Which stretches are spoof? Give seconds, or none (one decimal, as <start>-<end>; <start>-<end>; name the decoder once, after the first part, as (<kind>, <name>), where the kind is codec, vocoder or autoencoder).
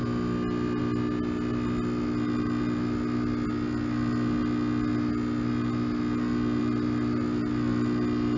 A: none